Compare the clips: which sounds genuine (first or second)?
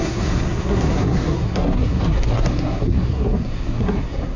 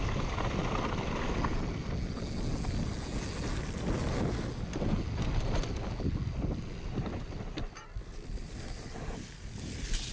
second